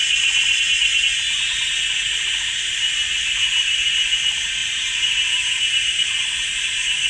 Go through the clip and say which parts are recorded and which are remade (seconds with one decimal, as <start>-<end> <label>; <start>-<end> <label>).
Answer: 0.0-4.6 recorded; 4.6-6.1 remade; 6.1-7.1 recorded